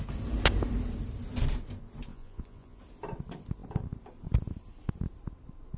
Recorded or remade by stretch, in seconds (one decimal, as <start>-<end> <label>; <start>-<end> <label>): 0.0-2.1 recorded; 2.1-2.8 remade; 2.8-5.8 recorded